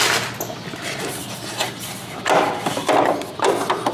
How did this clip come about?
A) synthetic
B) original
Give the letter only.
B